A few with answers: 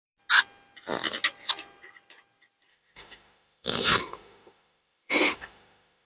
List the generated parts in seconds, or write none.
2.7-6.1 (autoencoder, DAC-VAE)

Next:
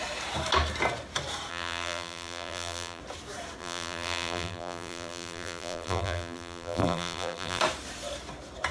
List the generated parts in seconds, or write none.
1.5-3.0 (vocoder, BigVGAN v2); 3.6-7.6

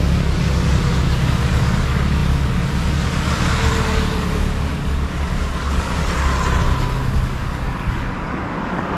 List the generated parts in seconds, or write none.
0.0-6.0 (codec, DAC); 7.0-9.0

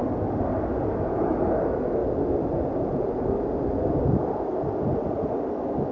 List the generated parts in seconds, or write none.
0.9-2.0 (autoencoder, DAC-VAE); 5.5-5.9

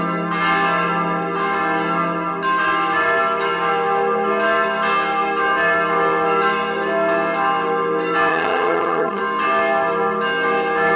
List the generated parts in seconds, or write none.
8.3-9.2 (vocoder, HiFi-GAN)

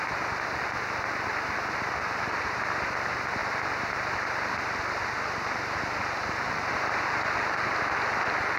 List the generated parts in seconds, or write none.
3.4-7.8 (vocoder, BigVGAN v2)